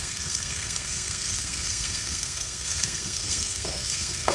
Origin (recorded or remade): remade